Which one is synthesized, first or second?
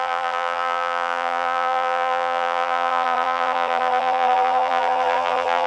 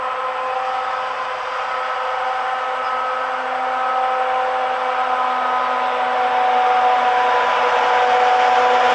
first